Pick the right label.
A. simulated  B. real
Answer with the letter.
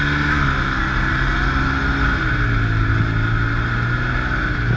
B